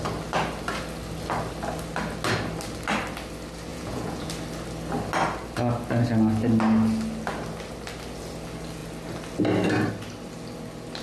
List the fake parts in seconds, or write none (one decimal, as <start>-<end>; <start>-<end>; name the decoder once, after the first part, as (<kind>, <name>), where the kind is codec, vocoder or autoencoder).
3.7-4.3 (vocoder, Vocos)